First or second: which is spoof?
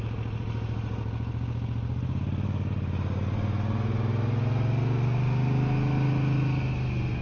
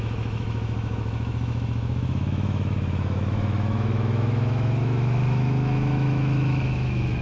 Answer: second